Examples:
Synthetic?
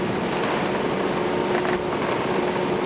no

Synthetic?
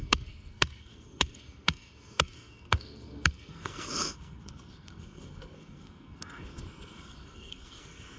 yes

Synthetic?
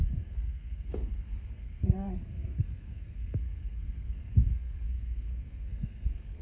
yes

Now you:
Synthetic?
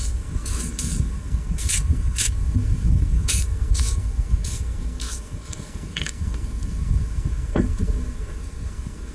yes